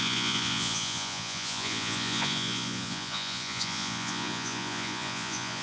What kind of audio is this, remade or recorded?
remade